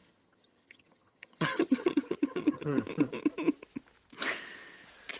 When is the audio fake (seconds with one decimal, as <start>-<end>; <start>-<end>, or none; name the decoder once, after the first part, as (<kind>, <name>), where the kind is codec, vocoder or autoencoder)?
0.0-2.8 (vocoder, HiFi-GAN)